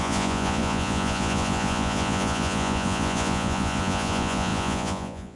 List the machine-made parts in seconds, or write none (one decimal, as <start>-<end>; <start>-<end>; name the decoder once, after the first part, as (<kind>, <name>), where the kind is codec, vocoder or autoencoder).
0.0-5.4 (vocoder, Vocos)